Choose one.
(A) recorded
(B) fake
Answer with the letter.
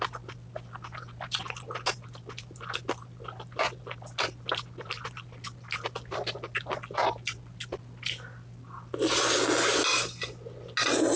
A